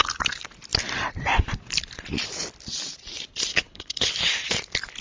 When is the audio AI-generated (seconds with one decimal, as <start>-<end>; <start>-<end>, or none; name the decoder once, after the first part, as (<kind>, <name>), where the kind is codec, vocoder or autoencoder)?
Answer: 3.5-4.1 (codec, HILCodec)